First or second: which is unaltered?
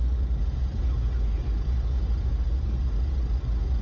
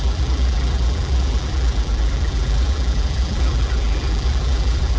first